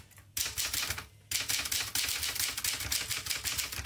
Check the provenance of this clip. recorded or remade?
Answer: recorded